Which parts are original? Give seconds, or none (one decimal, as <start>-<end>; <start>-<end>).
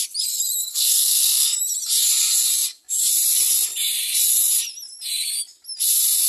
0.0-0.6; 1.6-6.3